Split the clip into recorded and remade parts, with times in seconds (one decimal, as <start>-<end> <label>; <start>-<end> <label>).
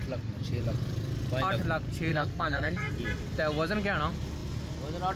0.0-2.1 recorded; 2.1-2.9 remade; 2.9-5.2 recorded